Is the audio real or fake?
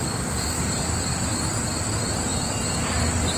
real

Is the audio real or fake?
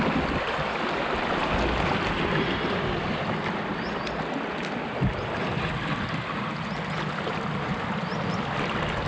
real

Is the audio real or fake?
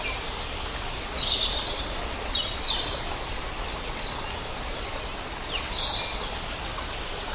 real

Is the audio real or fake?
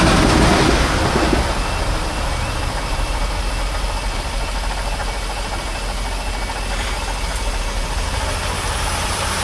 real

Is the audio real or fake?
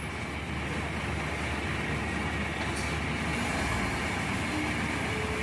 real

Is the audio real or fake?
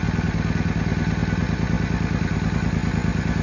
real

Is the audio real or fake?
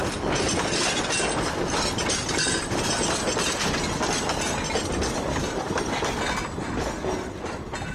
real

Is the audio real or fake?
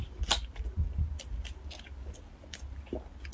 real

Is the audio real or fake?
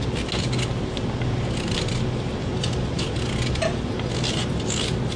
real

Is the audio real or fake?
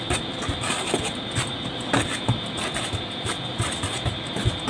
real